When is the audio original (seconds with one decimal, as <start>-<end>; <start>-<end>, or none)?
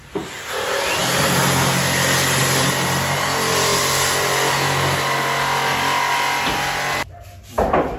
0.0-8.0